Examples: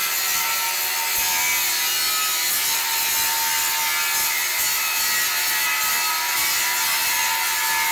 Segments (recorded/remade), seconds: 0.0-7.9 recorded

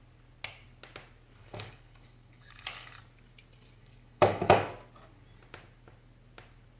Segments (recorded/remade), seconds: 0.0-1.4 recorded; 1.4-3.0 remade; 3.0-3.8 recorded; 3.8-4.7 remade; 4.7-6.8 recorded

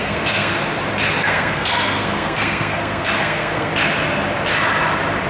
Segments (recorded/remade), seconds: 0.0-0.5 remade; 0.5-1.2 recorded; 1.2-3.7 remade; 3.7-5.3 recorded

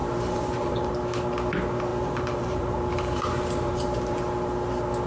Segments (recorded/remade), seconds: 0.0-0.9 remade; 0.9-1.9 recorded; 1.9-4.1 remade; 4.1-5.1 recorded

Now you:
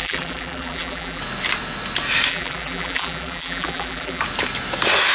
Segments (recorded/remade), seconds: 0.0-1.2 remade; 1.2-2.3 recorded; 2.3-4.2 remade; 4.2-5.1 recorded

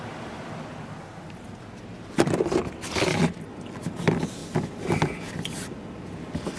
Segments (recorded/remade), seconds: 0.0-6.6 recorded

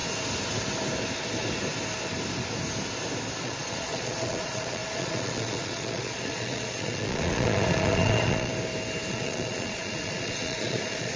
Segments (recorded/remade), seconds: 0.0-3.4 recorded; 3.4-8.5 remade; 8.5-9.1 recorded; 9.1-11.2 remade